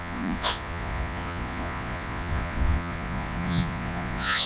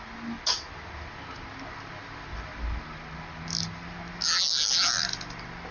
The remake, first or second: first